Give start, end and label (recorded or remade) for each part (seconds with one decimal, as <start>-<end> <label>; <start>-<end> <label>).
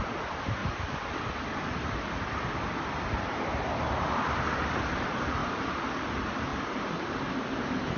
0.0-0.6 remade; 0.6-1.5 recorded; 1.5-5.4 remade; 5.4-6.0 recorded; 6.0-8.0 remade